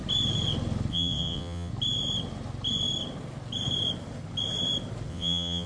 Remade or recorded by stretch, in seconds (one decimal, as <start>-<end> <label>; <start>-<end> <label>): 0.0-0.9 recorded; 0.9-1.7 remade; 1.7-5.1 recorded; 5.1-5.7 remade